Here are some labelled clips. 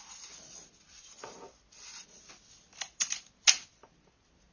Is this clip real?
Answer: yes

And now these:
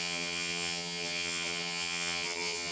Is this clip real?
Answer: no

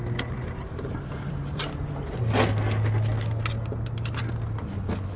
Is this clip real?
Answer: yes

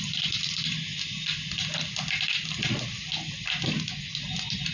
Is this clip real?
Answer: yes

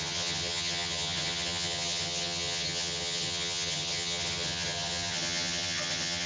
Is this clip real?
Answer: no